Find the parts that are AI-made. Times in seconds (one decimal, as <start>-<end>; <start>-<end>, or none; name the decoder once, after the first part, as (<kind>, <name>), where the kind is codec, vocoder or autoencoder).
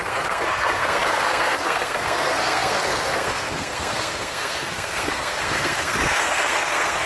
0.0-7.1 (codec, SNAC)